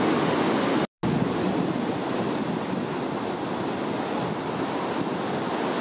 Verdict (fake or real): real